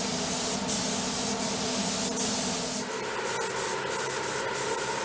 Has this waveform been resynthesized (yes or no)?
no